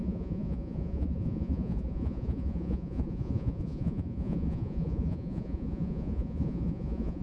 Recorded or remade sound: remade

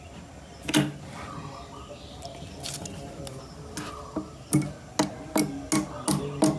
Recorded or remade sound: recorded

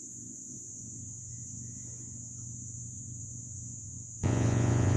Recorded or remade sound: remade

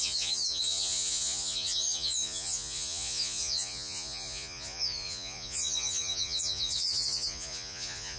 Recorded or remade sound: remade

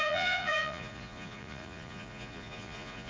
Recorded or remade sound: remade